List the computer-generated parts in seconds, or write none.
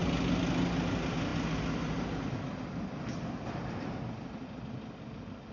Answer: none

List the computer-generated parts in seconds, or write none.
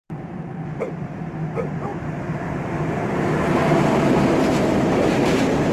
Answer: 0.8-5.7 (vocoder, BigVGAN v2)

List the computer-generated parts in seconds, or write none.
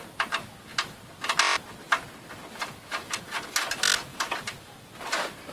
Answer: 4.1-5.0 (vocoder, BigVGAN v2)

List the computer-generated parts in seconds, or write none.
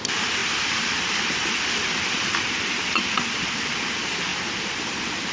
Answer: 0.4-2.8 (vocoder, BigVGAN v2); 4.3-4.8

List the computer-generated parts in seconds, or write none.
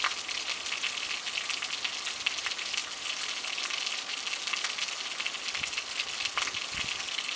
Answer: none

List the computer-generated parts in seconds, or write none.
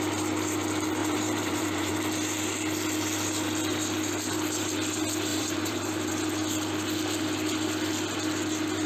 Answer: 1.0-1.9 (vocoder, BigVGAN v2); 5.3-6.1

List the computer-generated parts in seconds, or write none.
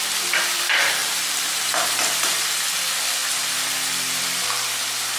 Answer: 1.0-2.5 (vocoder, BigVGAN v2)